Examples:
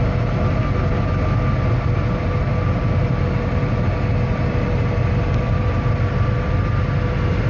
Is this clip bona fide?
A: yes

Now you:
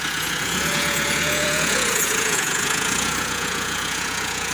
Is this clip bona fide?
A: no